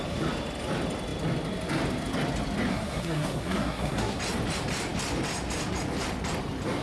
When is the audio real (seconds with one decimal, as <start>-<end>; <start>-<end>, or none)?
0.0-2.7; 4.2-6.8